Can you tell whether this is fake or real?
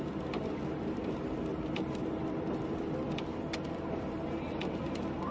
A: fake